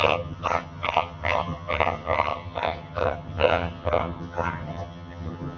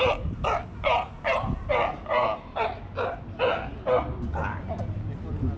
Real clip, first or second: second